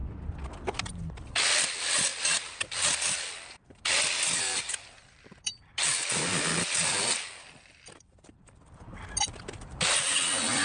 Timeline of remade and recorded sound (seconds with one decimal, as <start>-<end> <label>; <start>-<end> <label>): 0.0-0.5 recorded; 0.5-2.1 remade; 2.1-2.7 recorded; 2.7-10.6 remade